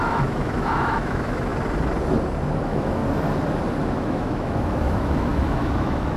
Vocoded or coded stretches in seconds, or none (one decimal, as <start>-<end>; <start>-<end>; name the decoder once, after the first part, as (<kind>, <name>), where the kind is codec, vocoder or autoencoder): 0.0-1.5 (autoencoder, DAC-VAE); 2.6-3.0; 3.9-6.2